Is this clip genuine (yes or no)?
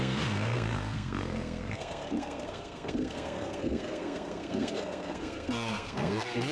no